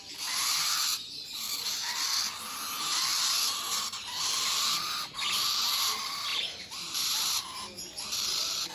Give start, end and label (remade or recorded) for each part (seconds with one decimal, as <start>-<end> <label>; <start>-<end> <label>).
0.0-6.3 recorded; 6.3-7.2 remade; 7.2-8.7 recorded